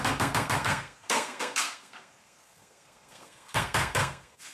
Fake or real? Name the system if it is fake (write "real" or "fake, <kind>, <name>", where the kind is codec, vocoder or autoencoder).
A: fake, codec, SNAC